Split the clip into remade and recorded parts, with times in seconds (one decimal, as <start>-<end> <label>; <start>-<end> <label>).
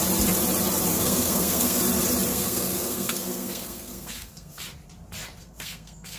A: 0.0-0.9 recorded; 0.9-1.8 remade; 1.8-2.3 recorded; 2.3-4.6 remade; 4.6-5.4 recorded; 5.4-6.2 remade